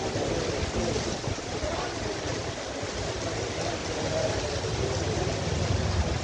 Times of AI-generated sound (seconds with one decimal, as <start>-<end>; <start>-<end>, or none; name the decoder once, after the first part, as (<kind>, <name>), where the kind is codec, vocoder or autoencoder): 2.3-2.9 (vocoder, BigVGAN v2); 3.8-5.7